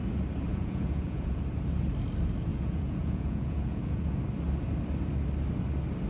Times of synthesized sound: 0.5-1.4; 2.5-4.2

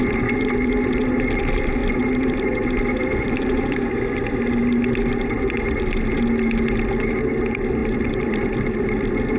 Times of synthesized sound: none